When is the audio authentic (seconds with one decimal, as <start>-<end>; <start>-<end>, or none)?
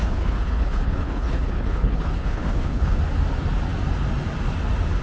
3.0-5.0